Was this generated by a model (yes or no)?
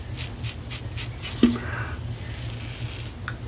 no